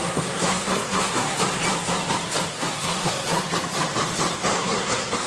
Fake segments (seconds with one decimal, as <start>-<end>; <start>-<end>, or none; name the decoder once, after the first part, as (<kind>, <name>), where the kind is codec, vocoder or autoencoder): 0.0-1.4 (codec, SNAC); 2.5-3.4; 4.5-5.3